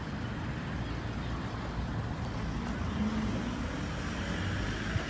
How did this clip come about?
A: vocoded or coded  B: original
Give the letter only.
B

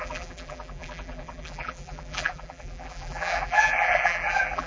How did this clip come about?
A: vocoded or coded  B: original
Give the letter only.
A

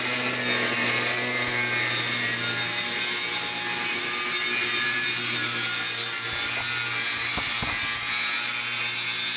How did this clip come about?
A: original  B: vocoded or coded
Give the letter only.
A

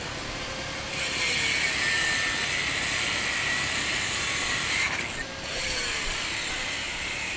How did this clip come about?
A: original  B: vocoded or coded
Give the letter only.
A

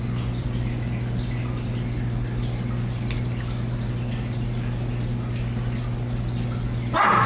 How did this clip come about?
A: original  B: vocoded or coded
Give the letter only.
A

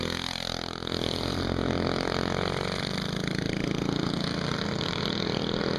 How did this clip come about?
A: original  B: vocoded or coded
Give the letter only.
A